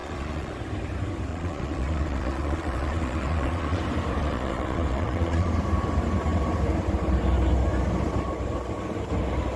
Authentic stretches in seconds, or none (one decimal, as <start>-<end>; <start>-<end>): 0.5-1.3; 3.8-4.2; 5.5-9.6

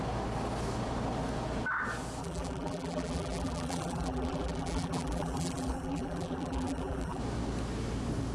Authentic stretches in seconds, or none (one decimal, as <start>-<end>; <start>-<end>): 0.0-2.2; 7.2-8.3

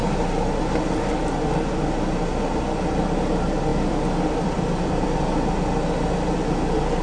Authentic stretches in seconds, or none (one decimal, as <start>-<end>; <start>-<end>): 0.0-3.7; 5.2-7.0

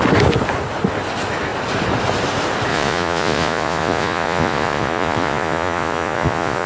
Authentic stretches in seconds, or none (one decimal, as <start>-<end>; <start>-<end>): 0.0-2.7

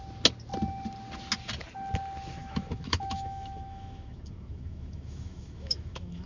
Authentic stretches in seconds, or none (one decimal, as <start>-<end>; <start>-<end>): 0.0-2.4

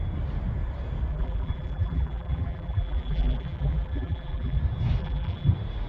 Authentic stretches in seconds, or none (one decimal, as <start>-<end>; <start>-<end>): 0.0-1.1; 4.6-5.0; 5.5-5.9